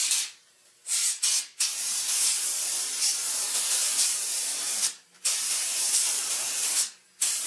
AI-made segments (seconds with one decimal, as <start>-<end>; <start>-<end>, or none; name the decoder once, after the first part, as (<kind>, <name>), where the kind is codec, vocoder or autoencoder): 0.0-1.2 (vocoder, BigVGAN v2); 3.8-6.7